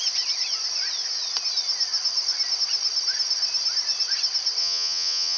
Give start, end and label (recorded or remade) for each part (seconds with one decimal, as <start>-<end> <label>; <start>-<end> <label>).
0.0-4.6 recorded; 4.6-5.4 remade